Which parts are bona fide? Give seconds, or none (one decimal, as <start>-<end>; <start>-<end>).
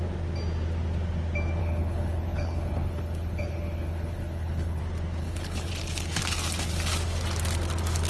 0.0-1.6; 4.8-5.2; 5.7-8.1